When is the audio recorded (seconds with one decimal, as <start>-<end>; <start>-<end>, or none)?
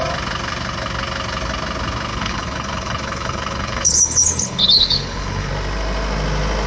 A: 0.0-2.1; 5.5-6.7